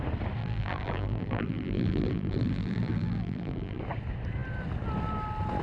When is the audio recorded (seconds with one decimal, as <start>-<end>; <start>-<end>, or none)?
0.0-0.4; 3.8-5.6